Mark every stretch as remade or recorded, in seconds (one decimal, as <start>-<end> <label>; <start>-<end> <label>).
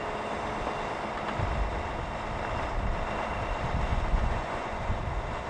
0.0-3.9 recorded; 3.9-5.0 remade; 5.0-5.5 recorded